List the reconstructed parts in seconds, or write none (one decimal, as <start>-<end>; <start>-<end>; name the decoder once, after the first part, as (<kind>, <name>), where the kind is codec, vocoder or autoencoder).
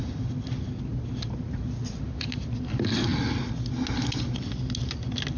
none